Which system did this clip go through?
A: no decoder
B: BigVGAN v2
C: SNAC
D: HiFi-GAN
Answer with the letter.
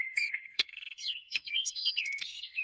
C